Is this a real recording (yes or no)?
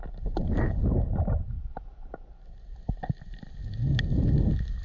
yes